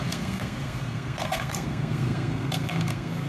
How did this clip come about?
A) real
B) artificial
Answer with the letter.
B